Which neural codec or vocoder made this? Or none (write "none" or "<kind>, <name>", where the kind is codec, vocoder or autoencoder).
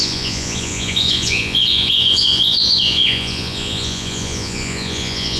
vocoder, Vocos